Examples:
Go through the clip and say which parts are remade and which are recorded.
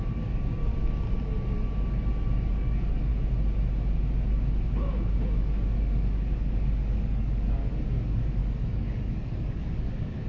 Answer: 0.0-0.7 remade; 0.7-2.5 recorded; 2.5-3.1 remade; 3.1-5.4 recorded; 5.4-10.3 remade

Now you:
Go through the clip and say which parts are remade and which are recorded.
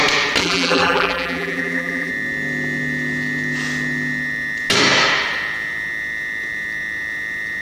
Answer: 0.0-0.4 recorded; 0.4-2.1 remade; 2.1-7.6 recorded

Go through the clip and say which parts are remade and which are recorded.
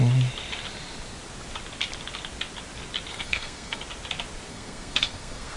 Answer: 0.0-3.1 recorded; 3.1-3.8 remade; 3.8-4.5 recorded; 4.5-5.6 remade